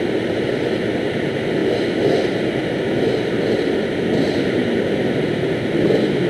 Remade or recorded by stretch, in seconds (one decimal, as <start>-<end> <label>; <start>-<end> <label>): 0.0-6.3 recorded